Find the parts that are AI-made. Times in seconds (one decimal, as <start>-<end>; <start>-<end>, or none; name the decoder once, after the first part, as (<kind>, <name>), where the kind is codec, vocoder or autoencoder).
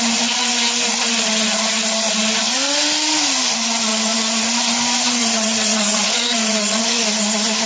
5.2-6.8 (vocoder, WaveNeXt)